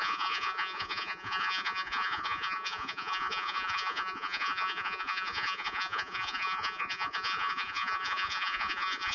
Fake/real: fake